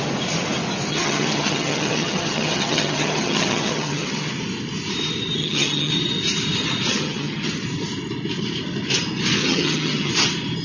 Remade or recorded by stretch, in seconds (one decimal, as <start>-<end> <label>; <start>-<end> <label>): 0.0-0.9 recorded; 0.9-4.4 remade; 4.4-5.4 recorded; 5.4-5.9 remade; 5.9-6.9 recorded; 6.9-7.5 remade; 7.5-9.4 recorded; 9.4-10.1 remade; 10.1-10.6 recorded